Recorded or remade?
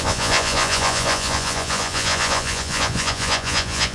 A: remade